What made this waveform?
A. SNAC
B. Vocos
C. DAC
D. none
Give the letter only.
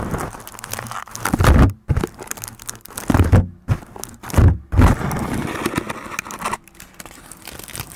D